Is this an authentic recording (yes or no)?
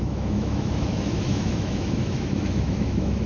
no